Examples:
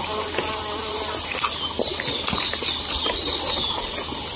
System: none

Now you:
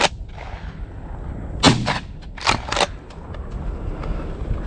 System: none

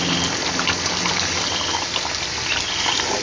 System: none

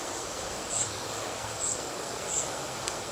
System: codec, SNAC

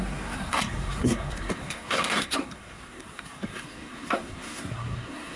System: codec, SNAC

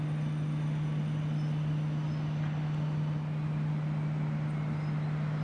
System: none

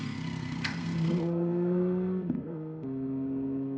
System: codec, SNAC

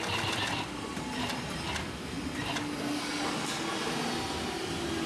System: none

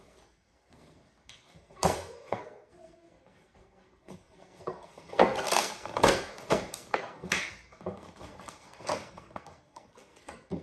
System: codec, SNAC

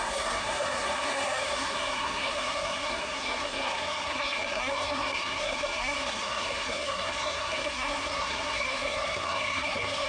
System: codec, SNAC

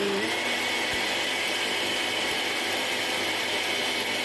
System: none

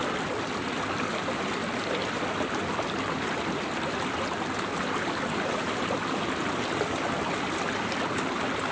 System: none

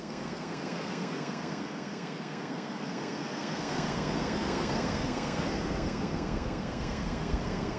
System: codec, SNAC